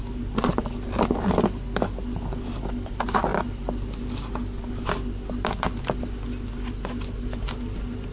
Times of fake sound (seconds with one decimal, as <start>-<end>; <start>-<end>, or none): none